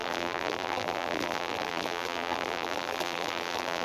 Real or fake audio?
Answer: fake